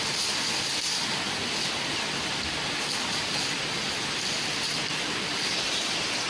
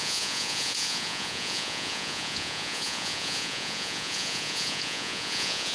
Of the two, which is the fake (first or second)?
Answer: second